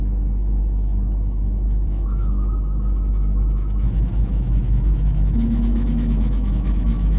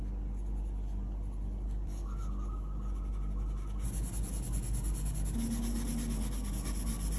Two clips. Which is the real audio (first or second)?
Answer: second